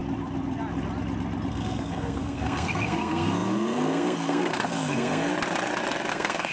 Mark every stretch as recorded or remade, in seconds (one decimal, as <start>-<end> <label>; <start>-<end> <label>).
0.0-1.5 recorded; 1.5-5.3 remade; 5.3-6.1 recorded; 6.1-6.5 remade